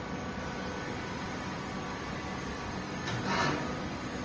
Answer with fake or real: real